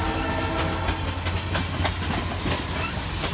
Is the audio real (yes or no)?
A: yes